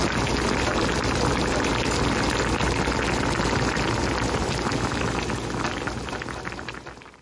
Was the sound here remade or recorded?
recorded